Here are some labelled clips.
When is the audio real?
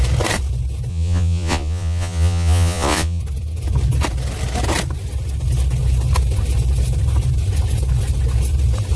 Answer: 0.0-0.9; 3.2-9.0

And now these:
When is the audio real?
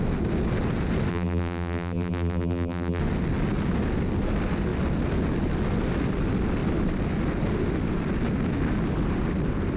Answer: 0.0-1.1; 3.0-9.8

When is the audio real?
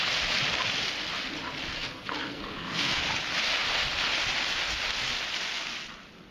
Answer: 0.0-1.7; 3.0-6.3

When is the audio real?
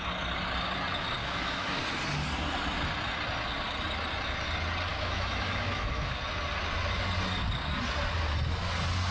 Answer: 0.0-1.2; 1.8-4.9; 6.2-9.1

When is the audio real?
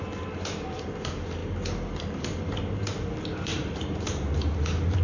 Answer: 0.0-3.5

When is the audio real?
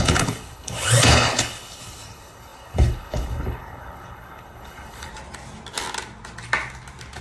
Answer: 5.1-7.2